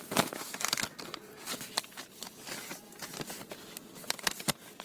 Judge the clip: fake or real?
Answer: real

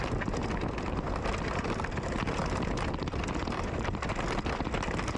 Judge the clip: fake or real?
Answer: real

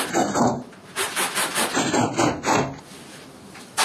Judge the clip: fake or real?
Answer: real